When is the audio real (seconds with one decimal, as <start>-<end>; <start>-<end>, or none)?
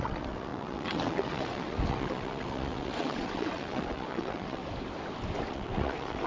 4.6-5.5